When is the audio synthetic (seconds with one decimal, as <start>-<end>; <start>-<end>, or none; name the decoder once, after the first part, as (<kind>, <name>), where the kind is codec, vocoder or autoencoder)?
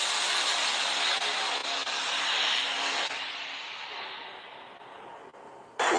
none